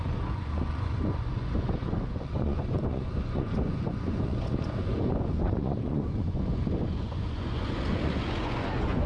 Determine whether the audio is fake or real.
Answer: fake